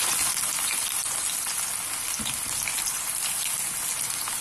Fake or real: real